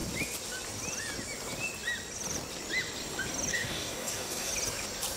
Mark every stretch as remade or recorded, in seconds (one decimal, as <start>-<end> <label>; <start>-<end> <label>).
0.0-3.5 recorded; 3.5-4.5 remade; 4.5-5.2 recorded